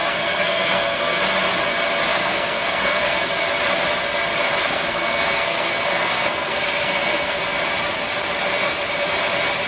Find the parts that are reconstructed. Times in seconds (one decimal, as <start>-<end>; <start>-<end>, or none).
0.0-1.2; 2.1-3.3; 4.6-7.4